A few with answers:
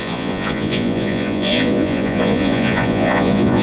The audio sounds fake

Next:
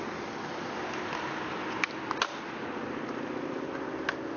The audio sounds real